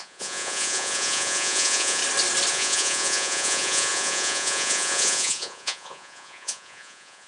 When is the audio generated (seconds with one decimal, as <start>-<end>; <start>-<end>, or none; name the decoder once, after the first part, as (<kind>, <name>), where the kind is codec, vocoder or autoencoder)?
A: 0.0-2.0 (vocoder, Vocos); 2.5-7.3